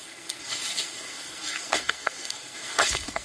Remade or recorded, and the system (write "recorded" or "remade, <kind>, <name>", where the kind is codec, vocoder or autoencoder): remade, codec, SNAC